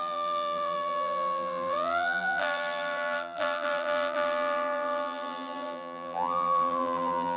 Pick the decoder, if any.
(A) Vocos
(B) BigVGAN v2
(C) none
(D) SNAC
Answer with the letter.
B